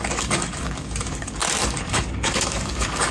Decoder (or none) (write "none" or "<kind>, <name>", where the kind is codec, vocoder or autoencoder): codec, DAC